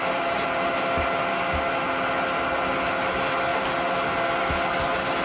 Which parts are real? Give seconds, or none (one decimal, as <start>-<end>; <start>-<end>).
0.0-5.2